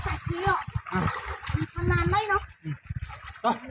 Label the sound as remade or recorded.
recorded